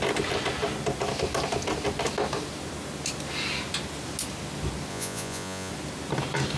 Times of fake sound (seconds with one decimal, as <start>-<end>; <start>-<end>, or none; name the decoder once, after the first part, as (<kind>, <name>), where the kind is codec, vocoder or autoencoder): 4.9-5.7 (vocoder, Vocos)